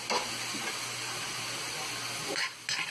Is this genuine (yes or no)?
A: yes